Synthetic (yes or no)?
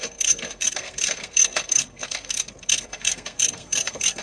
yes